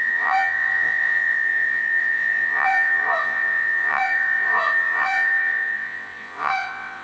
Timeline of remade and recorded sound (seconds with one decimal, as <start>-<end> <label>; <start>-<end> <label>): 0.0-7.0 remade